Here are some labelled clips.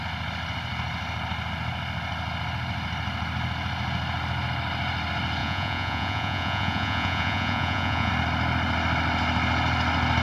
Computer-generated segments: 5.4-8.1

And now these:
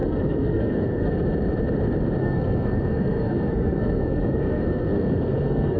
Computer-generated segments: 0.0-1.1; 2.2-5.8